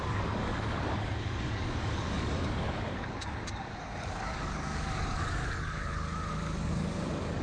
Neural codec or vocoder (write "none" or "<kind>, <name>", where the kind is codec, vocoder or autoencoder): codec, DAC